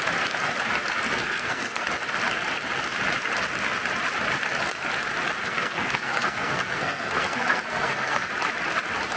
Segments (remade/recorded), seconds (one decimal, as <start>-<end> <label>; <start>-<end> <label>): 0.0-1.2 recorded; 1.2-1.9 remade; 1.9-5.4 recorded; 5.4-8.3 remade; 8.3-9.2 recorded